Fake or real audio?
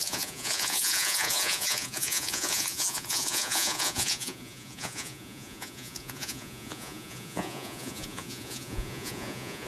fake